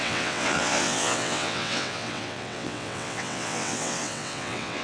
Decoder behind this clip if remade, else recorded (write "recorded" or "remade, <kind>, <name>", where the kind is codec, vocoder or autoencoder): remade, vocoder, WaveNeXt